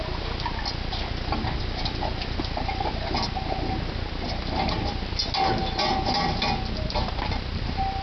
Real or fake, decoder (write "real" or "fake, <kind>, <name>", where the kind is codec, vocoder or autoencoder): real